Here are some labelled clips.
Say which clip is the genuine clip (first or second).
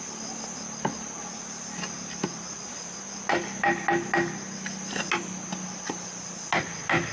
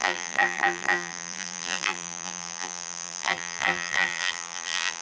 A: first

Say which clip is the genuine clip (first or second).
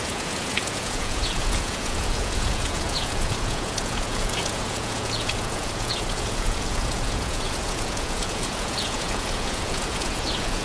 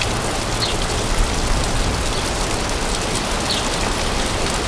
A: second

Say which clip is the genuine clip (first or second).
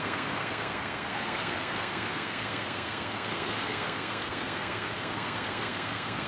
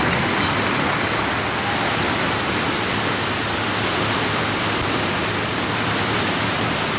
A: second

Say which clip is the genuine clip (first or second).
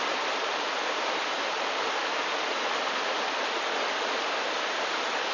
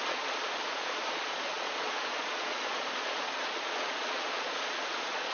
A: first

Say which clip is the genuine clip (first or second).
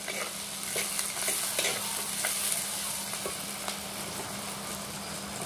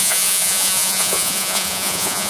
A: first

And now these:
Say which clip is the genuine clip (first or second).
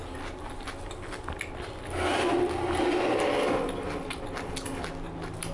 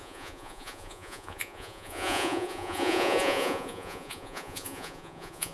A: first